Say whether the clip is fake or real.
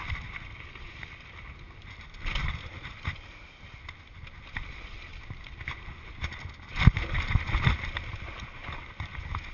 real